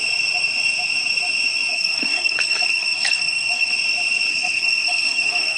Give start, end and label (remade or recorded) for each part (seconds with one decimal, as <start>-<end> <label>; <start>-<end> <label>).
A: 0.0-1.7 recorded; 1.7-3.7 remade; 3.7-4.3 recorded; 4.3-5.6 remade